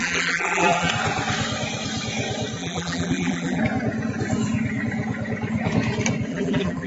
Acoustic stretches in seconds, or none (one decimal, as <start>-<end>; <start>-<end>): 0.9-2.6; 3.6-6.3